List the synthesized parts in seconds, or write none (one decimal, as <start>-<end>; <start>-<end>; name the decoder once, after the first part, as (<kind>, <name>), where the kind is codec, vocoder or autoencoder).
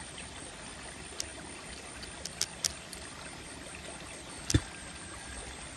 none